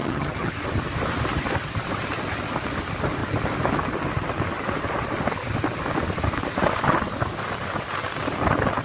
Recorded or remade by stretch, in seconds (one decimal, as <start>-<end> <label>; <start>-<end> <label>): 0.0-0.5 remade; 0.5-8.8 recorded